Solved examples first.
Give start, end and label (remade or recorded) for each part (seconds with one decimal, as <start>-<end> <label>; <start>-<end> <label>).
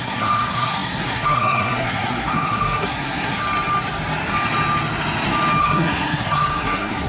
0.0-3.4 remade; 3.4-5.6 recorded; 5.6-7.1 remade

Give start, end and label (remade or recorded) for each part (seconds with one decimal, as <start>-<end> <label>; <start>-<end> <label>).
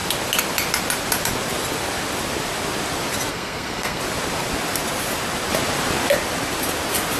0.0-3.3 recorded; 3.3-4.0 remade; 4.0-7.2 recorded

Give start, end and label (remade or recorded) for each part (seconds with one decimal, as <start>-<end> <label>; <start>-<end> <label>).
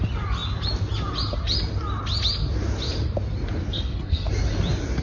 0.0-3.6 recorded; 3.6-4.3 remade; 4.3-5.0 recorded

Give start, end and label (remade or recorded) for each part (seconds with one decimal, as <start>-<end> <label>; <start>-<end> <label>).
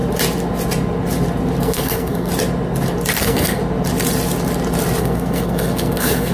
0.0-1.6 recorded; 1.6-2.3 remade; 2.3-3.2 recorded; 3.2-3.6 remade; 3.6-5.0 recorded; 5.0-6.3 remade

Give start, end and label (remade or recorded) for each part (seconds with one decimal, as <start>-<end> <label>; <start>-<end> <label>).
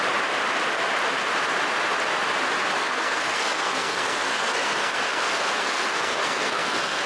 0.0-2.6 recorded; 2.6-7.1 remade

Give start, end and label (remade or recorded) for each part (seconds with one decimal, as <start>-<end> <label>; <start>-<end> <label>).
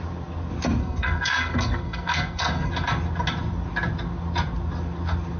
0.0-0.8 recorded; 0.8-2.7 remade; 2.7-5.4 recorded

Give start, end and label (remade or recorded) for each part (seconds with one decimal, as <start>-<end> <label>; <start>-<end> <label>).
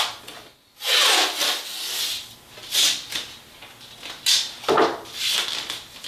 0.0-6.1 recorded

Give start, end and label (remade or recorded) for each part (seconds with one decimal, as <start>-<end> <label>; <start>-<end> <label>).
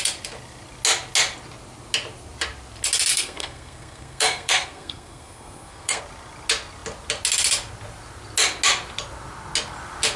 0.0-3.1 recorded; 3.1-6.0 remade; 6.0-10.2 recorded